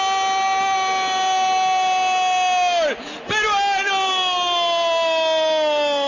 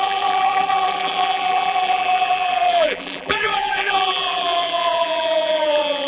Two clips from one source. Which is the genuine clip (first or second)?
first